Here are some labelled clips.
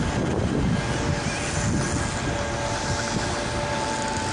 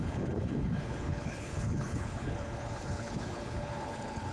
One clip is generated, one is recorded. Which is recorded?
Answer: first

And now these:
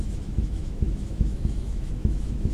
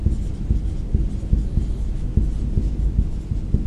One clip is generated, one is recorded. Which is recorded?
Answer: second